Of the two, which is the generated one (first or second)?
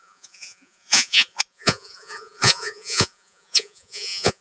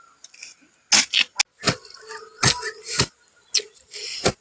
first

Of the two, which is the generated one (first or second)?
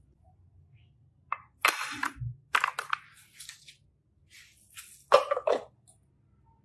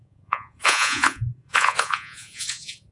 second